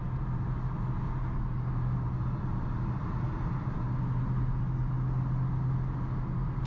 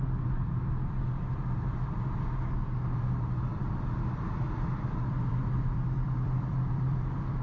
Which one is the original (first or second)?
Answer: first